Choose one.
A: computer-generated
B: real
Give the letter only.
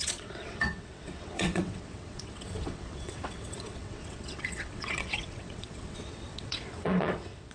A